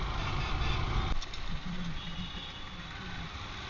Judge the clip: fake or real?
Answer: real